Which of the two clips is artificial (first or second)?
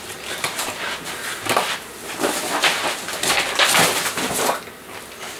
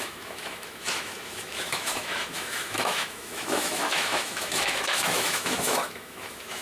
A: second